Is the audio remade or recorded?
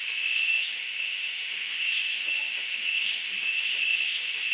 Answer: remade